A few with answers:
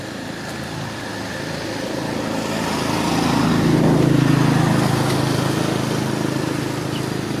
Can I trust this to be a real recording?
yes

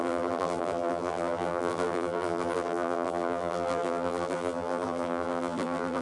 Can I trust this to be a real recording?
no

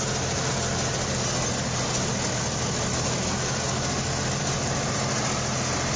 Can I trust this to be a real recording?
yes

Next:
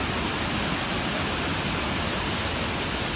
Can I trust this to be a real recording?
yes